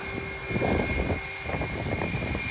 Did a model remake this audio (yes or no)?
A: no